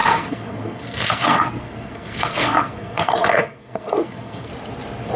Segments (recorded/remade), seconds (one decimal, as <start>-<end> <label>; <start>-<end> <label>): 0.0-4.5 remade; 4.5-5.2 recorded